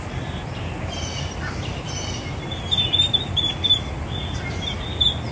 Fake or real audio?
real